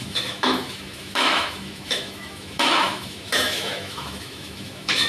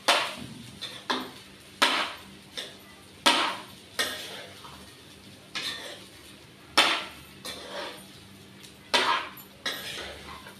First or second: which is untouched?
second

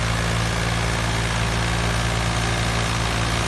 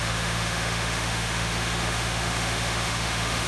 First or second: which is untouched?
first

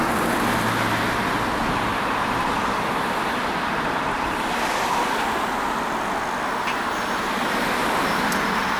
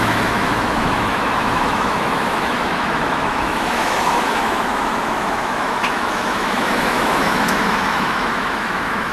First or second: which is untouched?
first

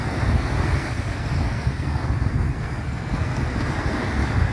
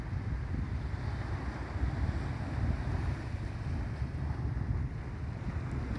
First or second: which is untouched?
second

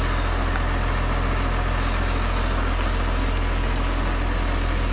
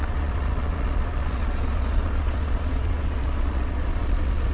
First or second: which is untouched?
first